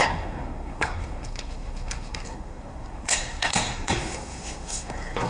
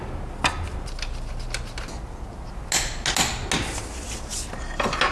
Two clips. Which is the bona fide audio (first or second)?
second